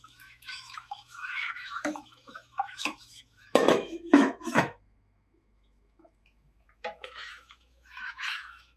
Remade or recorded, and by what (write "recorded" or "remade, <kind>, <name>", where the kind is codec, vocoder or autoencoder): remade, autoencoder, DAC-VAE